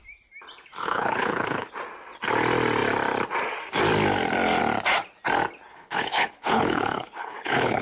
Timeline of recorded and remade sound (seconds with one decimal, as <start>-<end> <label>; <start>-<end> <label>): 0.0-0.8 recorded; 0.8-1.7 remade; 1.7-5.7 recorded; 5.7-7.8 remade